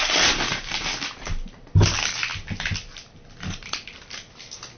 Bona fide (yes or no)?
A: yes